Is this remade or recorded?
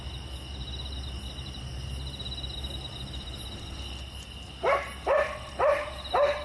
recorded